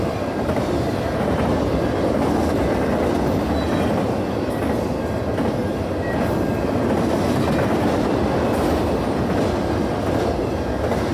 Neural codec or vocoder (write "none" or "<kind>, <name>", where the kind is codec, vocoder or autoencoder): none